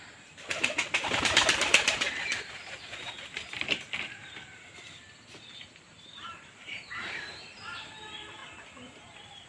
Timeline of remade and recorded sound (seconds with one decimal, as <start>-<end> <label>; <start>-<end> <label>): 0.0-2.3 remade; 2.3-3.3 recorded; 3.3-4.2 remade; 4.2-6.1 recorded; 6.1-8.4 remade; 8.4-9.5 recorded